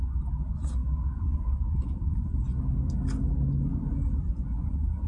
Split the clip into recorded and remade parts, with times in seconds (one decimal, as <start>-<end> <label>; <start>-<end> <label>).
0.0-0.8 recorded; 0.8-2.6 remade; 2.6-3.7 recorded; 3.7-4.3 remade; 4.3-5.1 recorded